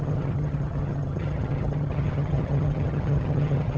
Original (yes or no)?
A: no